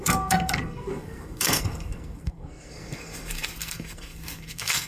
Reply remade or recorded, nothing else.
remade